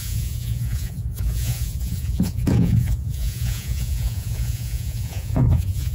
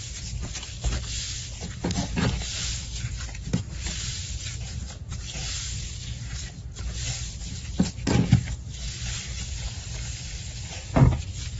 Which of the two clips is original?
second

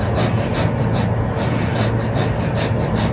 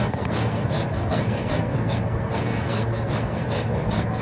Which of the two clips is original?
first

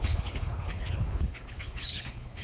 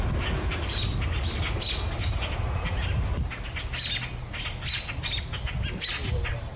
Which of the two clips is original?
second